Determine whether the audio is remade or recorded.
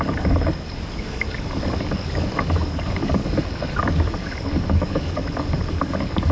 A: remade